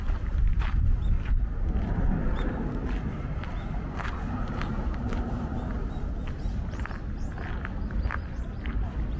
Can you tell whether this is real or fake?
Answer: real